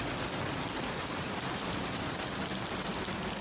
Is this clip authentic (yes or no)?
yes